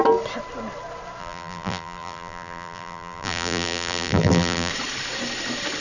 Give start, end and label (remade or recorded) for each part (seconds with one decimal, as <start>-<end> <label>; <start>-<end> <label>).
0.0-1.2 recorded; 1.2-4.7 remade; 4.7-5.8 recorded